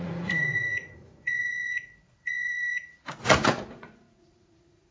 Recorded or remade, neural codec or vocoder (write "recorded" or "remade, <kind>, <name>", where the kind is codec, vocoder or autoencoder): remade, vocoder, Vocos